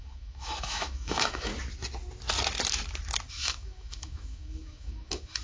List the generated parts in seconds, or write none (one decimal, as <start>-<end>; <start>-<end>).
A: 0.0-1.5; 3.3-5.4